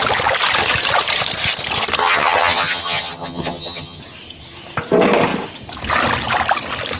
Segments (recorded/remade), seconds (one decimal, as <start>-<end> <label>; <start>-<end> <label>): 0.0-2.0 recorded; 2.0-4.0 remade; 4.0-7.0 recorded